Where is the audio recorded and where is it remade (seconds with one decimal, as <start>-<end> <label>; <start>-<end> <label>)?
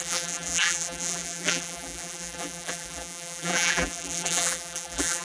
0.0-5.2 remade